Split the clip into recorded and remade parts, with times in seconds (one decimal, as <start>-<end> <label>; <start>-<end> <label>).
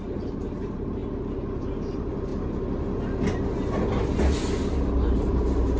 0.0-1.0 remade; 1.0-1.6 recorded; 1.6-2.3 remade; 2.3-4.9 recorded; 4.9-5.8 remade